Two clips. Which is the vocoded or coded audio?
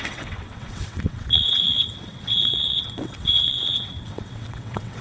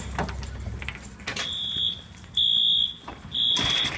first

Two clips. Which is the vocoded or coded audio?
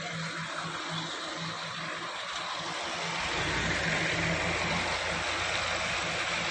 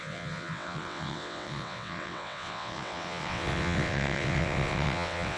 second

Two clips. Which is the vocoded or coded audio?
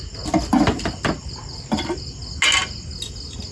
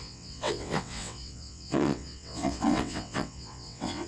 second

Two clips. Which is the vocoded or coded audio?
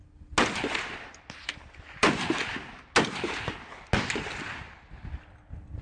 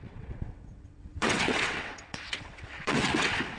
second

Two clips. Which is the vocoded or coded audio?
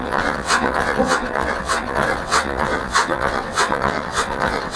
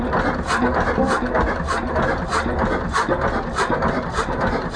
first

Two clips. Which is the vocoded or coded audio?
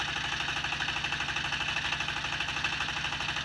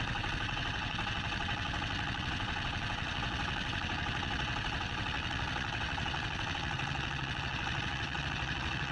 second